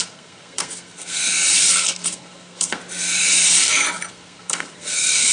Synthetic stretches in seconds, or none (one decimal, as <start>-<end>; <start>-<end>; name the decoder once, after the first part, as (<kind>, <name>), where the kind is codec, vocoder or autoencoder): 0.0-1.2 (codec, SNAC); 1.7-2.8; 4.1-5.3